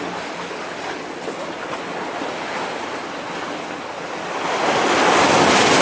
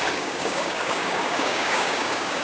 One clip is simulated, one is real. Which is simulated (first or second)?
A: second